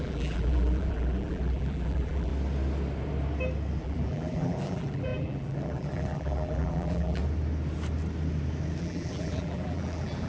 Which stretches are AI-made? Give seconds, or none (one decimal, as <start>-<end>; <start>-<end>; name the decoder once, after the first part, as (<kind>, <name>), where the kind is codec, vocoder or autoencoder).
0.0-2.3 (vocoder, BigVGAN v2); 3.8-7.2; 8.8-10.3